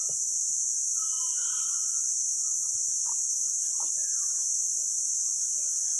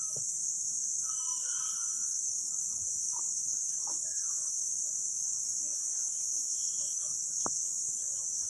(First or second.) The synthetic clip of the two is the second